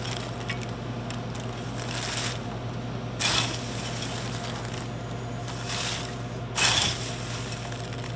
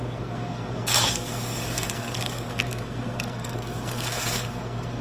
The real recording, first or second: first